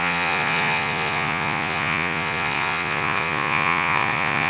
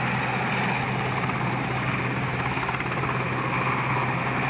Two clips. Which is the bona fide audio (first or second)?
second